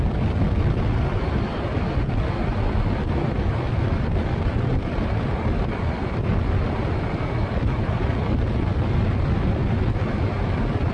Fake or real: fake